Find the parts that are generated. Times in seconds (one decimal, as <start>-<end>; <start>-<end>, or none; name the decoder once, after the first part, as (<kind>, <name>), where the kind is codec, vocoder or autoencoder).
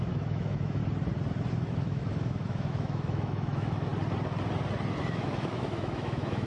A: 0.0-0.8 (autoencoder, DAC-VAE); 1.5-3.9; 5.1-6.5